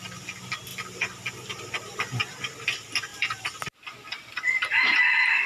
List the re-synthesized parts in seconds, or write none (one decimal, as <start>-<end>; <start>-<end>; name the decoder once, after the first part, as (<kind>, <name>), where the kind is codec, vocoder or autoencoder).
3.1-3.6 (vocoder, BigVGAN v2)